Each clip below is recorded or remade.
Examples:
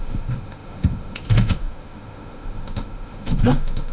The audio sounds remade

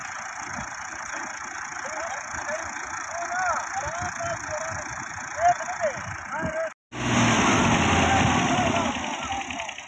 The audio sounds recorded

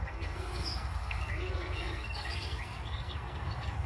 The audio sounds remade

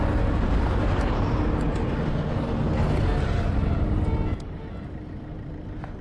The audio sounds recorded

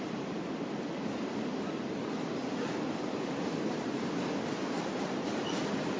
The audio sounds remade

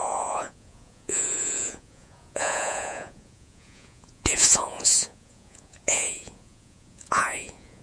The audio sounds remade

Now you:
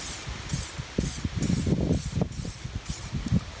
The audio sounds recorded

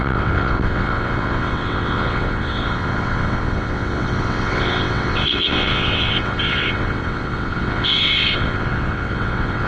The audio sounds remade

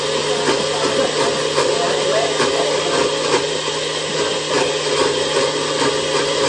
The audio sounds recorded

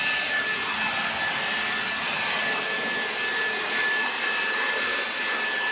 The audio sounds recorded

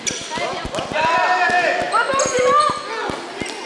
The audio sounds recorded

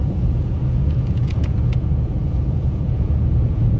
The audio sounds remade